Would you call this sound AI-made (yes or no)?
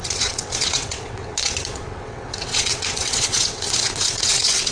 yes